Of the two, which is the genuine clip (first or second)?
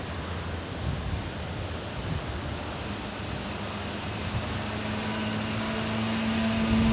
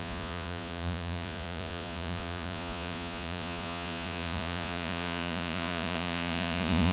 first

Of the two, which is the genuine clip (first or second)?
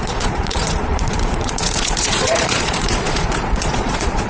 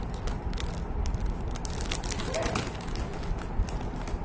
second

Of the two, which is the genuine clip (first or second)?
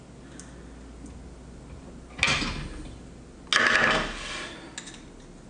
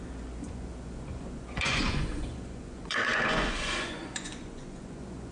first